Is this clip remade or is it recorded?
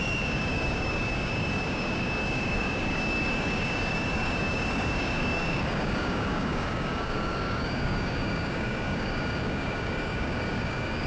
remade